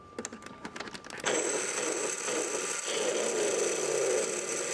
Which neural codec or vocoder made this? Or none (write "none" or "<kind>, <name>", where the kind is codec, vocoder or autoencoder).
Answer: none